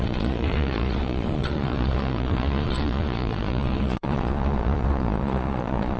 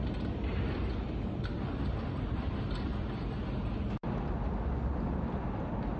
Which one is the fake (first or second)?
first